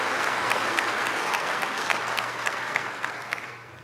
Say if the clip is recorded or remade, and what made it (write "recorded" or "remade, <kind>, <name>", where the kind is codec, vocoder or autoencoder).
remade, codec, SNAC